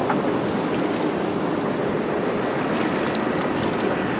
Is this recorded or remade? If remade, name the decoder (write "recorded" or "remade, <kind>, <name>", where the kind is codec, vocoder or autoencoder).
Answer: recorded